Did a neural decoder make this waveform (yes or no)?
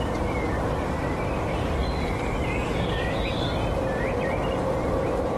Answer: yes